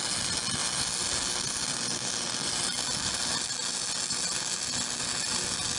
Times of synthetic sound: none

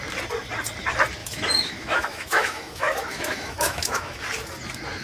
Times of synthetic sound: 1.2-4.2 (autoencoder, DAC-VAE)

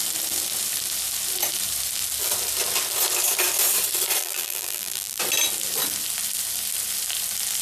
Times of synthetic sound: 4.2-5.2 (vocoder, BigVGAN v2)

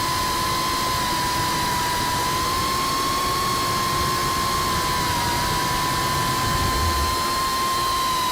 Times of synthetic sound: none

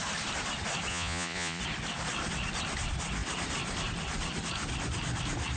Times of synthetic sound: 0.9-1.6 (vocoder, Vocos)

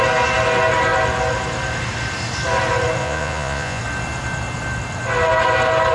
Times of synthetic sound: 3.0-3.8 (vocoder, Vocos)

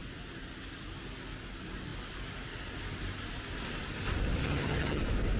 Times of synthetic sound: 4.4-5.0 (vocoder, HiFi-GAN)